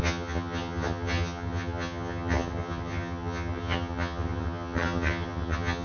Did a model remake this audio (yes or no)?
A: yes